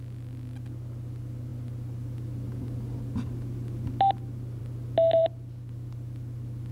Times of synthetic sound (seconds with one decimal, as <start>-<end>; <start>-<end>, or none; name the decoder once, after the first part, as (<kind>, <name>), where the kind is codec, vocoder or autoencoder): none